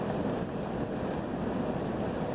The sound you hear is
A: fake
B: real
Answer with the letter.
B